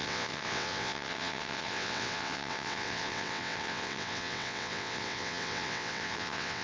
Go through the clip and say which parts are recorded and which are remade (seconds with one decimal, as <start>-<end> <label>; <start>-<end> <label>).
0.0-6.6 remade